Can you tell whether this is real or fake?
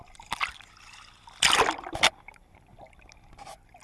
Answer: real